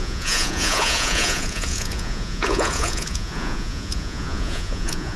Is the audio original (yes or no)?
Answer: no